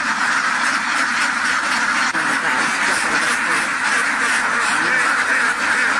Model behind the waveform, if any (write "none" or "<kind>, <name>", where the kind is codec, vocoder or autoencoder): none